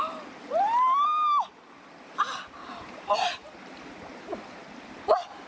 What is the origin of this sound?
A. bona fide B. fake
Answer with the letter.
A